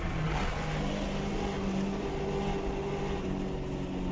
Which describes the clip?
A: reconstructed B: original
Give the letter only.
B